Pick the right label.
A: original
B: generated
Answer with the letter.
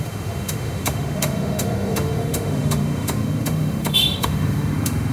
B